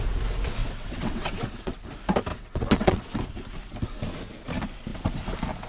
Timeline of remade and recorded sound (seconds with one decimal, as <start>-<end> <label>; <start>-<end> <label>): 0.0-0.6 recorded; 0.6-1.8 remade; 1.8-2.3 recorded; 2.3-3.2 remade; 3.2-5.7 recorded